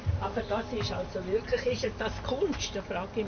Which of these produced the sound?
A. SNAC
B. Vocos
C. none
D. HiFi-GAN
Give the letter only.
C